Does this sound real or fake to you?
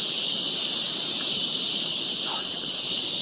fake